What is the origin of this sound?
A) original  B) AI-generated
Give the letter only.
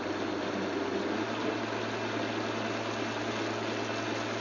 A